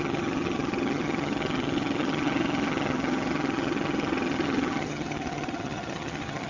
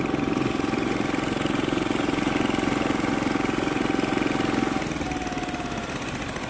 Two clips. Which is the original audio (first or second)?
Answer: second